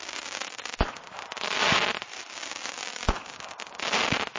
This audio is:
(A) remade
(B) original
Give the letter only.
B